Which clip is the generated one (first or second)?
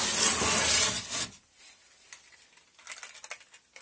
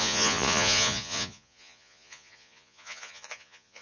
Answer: second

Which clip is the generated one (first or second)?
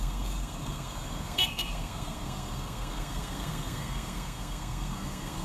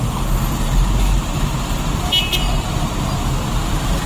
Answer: first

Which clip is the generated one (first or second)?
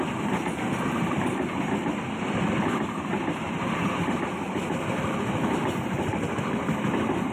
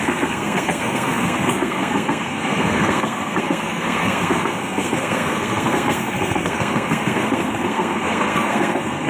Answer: second